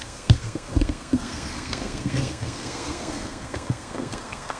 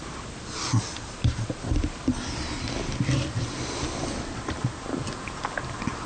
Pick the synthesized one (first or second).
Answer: first